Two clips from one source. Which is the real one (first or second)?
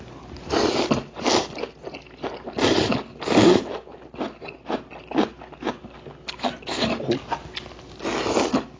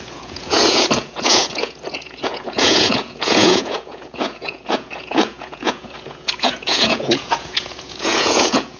first